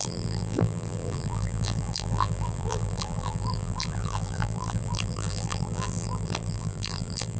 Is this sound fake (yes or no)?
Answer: yes